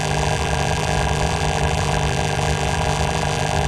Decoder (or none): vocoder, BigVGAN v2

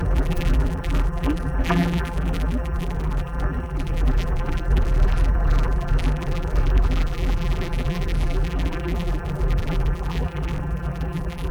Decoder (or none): vocoder, BigVGAN v2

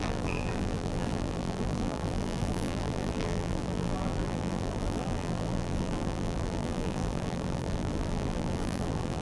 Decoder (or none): vocoder, BigVGAN v2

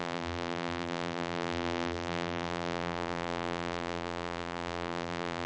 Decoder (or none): vocoder, BigVGAN v2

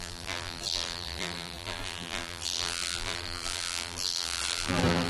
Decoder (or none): vocoder, BigVGAN v2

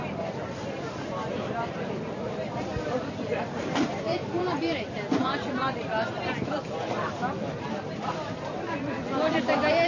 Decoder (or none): vocoder, BigVGAN v2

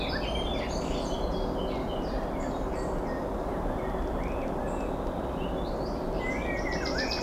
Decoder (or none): none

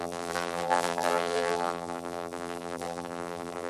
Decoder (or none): vocoder, BigVGAN v2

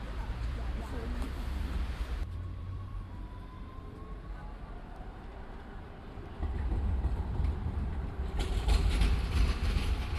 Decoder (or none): vocoder, BigVGAN v2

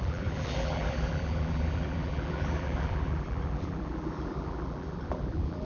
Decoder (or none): vocoder, BigVGAN v2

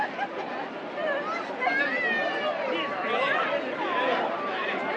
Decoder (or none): none